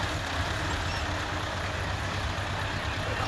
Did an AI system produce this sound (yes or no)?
no